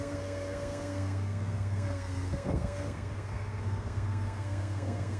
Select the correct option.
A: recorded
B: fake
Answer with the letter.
B